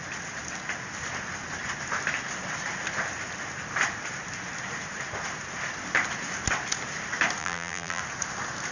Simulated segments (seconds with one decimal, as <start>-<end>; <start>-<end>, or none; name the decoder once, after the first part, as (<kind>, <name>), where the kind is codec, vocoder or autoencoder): 7.4-8.0 (vocoder, BigVGAN v2)